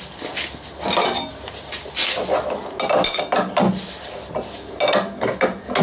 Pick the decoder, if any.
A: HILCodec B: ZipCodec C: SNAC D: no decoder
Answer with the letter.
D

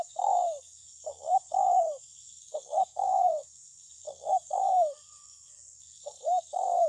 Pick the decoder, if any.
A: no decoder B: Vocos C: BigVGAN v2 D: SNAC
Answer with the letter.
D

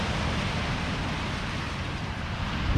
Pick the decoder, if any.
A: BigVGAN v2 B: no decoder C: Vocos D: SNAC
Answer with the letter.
B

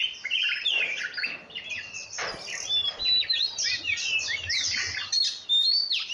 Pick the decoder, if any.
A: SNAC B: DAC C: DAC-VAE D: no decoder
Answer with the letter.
D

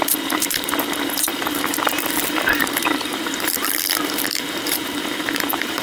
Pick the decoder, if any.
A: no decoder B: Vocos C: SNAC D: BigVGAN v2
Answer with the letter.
D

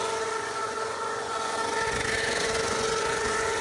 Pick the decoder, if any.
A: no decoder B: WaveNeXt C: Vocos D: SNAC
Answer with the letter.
C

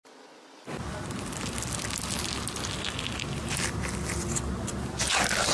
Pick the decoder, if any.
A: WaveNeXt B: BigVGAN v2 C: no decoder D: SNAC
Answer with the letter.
C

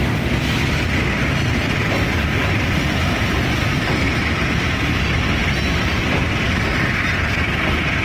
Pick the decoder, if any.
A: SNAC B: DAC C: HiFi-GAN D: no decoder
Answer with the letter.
D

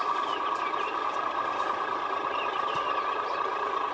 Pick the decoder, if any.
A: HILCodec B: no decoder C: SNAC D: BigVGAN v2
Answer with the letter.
B